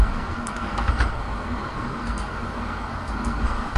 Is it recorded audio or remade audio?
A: remade